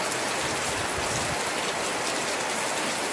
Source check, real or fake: real